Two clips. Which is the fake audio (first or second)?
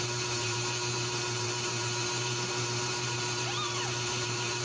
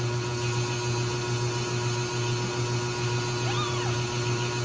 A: first